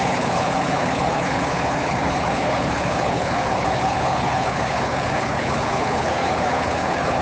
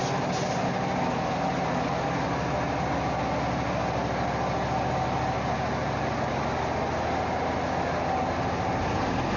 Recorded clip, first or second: second